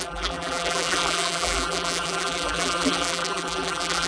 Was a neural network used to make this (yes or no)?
yes